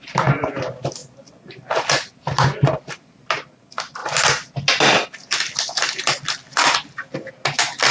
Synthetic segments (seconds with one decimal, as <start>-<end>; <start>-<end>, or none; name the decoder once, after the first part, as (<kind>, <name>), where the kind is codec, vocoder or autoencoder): none